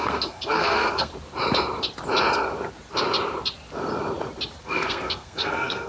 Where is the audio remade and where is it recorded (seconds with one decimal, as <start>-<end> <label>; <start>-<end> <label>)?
0.0-1.1 remade; 1.1-4.6 recorded; 4.6-5.9 remade